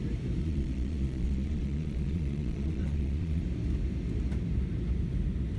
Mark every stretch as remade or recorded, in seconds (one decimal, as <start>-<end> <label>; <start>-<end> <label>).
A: 0.0-0.4 recorded; 0.4-3.4 remade; 3.4-5.6 recorded